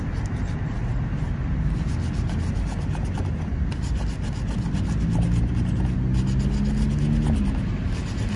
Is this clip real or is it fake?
real